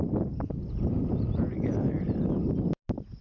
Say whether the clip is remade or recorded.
recorded